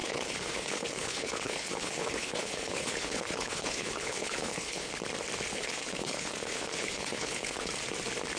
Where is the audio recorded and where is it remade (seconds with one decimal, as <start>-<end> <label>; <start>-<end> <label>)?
0.0-4.9 remade; 4.9-5.5 recorded; 5.5-7.7 remade; 7.7-8.4 recorded